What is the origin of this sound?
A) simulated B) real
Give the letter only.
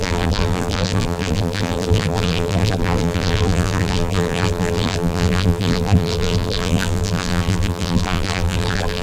A